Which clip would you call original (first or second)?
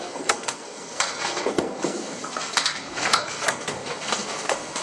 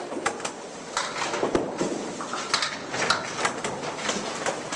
second